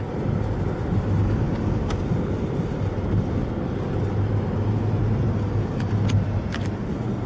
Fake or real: real